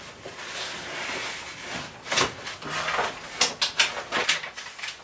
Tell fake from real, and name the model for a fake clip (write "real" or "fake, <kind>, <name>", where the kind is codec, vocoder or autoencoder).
real